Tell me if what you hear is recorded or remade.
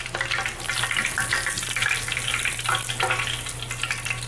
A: recorded